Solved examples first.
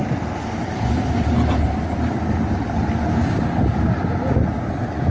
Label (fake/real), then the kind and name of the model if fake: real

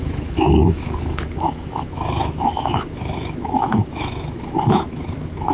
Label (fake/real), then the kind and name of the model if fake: fake, autoencoder, DAC-VAE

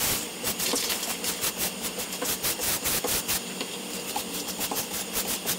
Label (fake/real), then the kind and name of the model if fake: real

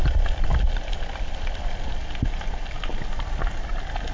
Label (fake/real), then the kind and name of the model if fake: real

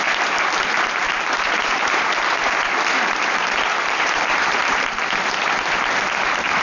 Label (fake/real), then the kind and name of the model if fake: fake, vocoder, BigVGAN v2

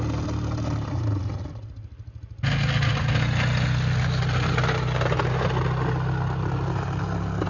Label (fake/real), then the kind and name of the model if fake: real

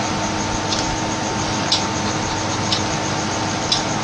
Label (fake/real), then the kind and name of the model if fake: real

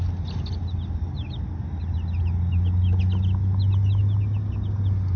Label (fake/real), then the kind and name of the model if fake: real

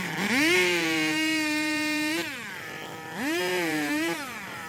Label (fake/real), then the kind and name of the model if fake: fake, vocoder, BigVGAN v2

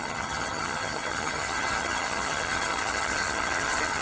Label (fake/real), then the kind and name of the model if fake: fake, vocoder, HiFi-GAN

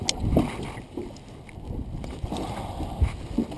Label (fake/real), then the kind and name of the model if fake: real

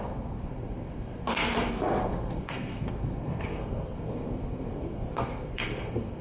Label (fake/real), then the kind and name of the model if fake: fake, codec, SNAC